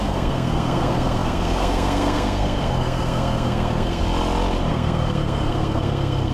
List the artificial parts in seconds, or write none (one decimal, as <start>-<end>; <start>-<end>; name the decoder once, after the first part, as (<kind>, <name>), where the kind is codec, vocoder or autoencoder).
0.0-4.0 (codec, SNAC); 4.7-6.3